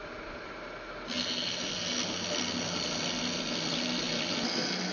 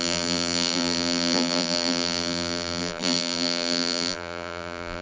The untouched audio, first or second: first